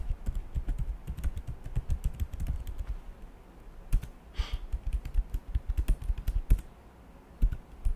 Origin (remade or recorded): recorded